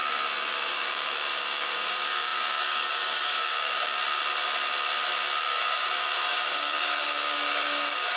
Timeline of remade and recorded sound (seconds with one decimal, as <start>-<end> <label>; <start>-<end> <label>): 0.0-0.5 recorded; 0.5-4.0 remade; 4.0-5.4 recorded; 5.4-8.2 remade